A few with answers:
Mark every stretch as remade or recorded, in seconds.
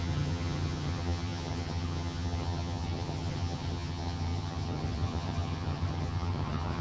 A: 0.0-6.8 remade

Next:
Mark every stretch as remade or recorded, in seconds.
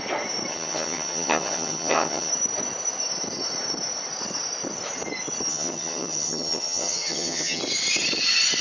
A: 0.0-0.5 recorded; 0.5-2.3 remade; 2.3-5.5 recorded; 5.5-7.6 remade; 7.6-8.6 recorded